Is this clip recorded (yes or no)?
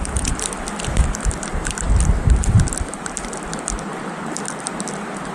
no